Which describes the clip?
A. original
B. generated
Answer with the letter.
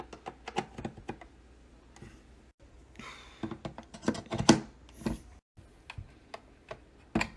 A